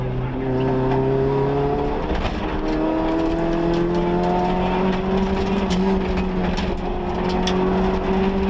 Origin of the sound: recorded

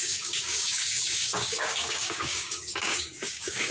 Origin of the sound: remade